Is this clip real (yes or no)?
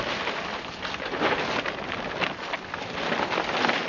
yes